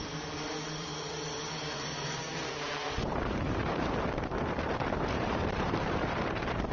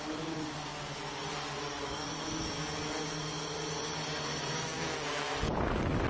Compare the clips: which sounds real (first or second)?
second